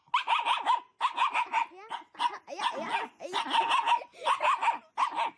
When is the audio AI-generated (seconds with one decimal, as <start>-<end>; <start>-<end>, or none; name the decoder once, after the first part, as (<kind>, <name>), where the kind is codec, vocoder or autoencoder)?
none